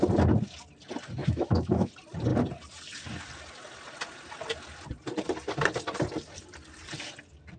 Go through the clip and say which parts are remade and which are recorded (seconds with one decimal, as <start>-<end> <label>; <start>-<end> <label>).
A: 0.0-1.2 recorded; 1.2-1.9 remade; 1.9-7.6 recorded